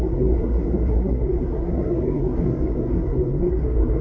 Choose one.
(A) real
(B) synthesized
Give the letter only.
B